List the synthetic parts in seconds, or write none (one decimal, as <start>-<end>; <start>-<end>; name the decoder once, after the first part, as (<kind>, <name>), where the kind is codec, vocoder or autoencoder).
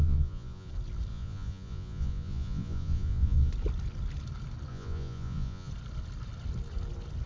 0.0-0.7 (vocoder, Vocos); 1.1-3.5; 4.7-5.7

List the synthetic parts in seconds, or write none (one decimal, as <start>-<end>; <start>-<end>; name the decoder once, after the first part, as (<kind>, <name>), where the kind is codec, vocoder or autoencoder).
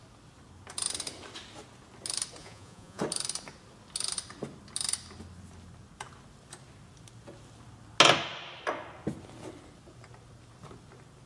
2.4-3.0 (vocoder, Vocos)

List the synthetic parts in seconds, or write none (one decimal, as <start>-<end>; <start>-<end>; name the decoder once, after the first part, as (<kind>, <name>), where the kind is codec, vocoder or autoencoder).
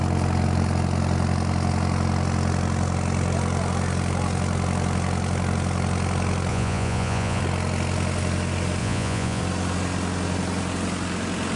6.5-7.4 (vocoder, Vocos); 8.8-9.4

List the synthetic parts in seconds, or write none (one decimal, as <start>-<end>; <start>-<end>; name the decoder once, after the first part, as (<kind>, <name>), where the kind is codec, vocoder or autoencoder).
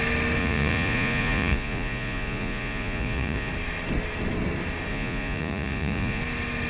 0.4-3.5 (vocoder, Vocos); 4.9-6.2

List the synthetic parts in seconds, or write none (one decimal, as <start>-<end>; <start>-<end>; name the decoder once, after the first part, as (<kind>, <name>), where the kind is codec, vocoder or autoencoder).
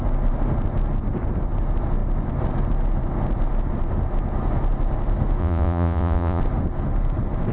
5.4-6.4 (vocoder, Vocos)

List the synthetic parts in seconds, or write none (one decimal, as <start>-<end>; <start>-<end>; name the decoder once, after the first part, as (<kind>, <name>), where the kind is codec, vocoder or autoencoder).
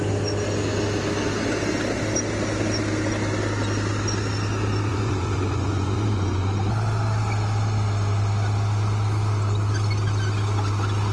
4.9-6.5 (vocoder, Vocos)